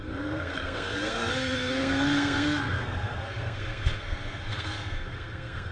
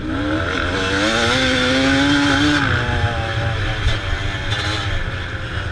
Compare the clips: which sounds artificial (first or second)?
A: first